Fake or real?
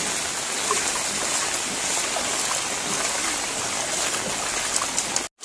real